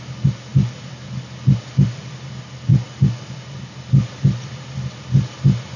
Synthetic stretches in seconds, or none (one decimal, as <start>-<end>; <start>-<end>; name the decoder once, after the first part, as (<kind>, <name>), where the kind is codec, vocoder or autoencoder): none